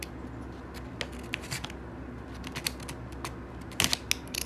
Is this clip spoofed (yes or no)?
no